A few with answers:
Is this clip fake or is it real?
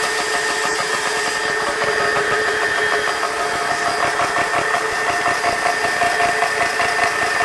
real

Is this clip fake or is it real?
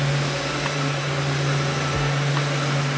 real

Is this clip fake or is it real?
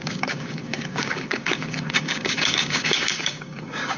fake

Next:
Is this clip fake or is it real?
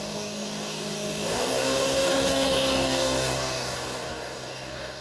fake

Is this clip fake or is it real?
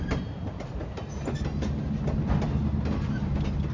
real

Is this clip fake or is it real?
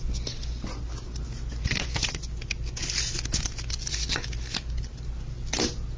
real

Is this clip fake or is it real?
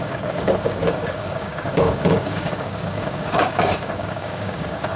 fake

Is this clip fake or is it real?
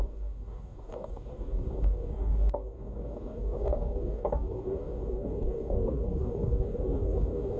fake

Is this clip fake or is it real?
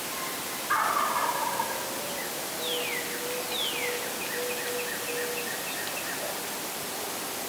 real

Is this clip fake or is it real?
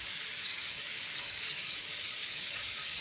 fake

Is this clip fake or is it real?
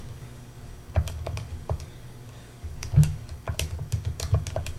fake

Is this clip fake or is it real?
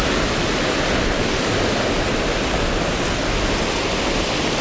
real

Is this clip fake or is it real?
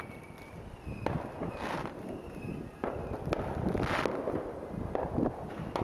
real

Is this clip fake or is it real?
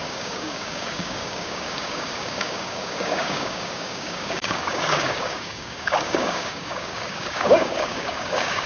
fake